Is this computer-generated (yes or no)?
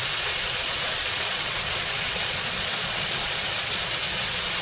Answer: yes